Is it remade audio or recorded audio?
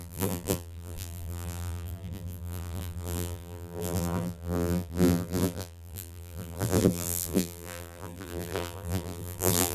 remade